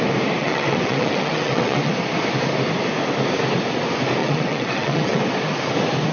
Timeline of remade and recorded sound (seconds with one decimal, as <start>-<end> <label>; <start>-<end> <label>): 0.0-0.4 recorded; 0.4-1.9 remade; 1.9-4.2 recorded; 4.2-5.2 remade; 5.2-6.1 recorded